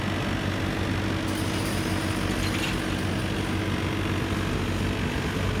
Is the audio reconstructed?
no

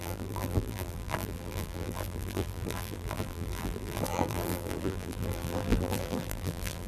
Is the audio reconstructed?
yes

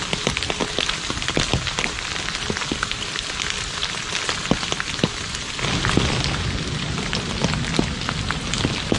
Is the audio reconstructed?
no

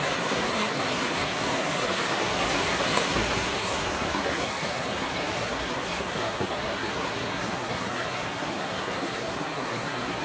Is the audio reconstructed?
yes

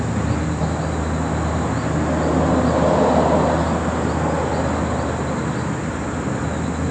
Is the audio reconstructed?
no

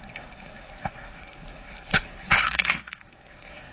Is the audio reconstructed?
yes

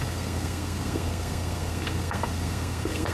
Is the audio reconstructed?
yes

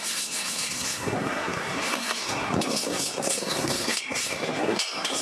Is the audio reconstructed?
yes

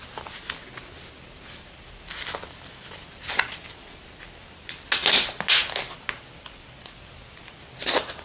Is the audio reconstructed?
no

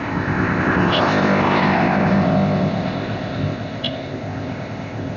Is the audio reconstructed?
yes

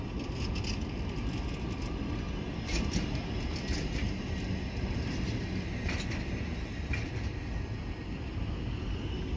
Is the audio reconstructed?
no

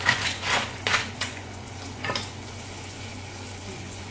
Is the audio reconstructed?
yes